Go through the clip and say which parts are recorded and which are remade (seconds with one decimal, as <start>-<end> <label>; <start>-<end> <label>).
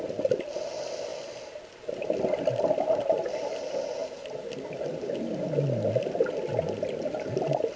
0.0-7.8 recorded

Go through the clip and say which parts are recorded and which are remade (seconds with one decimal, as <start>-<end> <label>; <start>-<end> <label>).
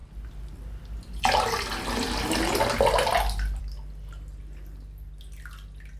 0.0-6.0 recorded